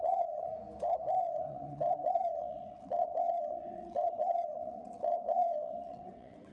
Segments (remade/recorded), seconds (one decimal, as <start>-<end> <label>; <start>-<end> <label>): 0.0-0.5 remade; 0.5-1.2 recorded; 1.2-6.5 remade